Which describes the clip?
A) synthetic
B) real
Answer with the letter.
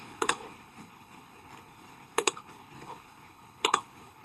A